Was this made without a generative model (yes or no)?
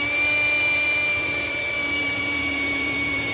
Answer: no